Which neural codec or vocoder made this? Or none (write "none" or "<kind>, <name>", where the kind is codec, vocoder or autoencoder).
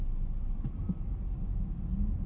none